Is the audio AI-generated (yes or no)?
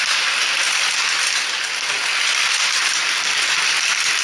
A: no